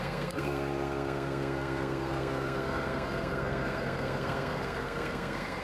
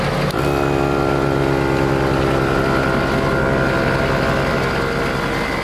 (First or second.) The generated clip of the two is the first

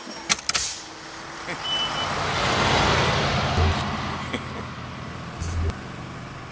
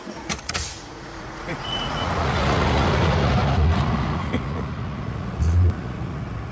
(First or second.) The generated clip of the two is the second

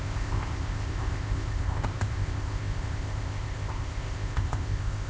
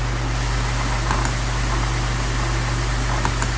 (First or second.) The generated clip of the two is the first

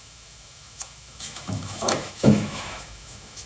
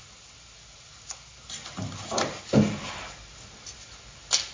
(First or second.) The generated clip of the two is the first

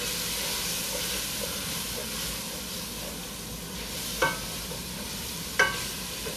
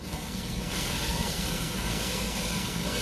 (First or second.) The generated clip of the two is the second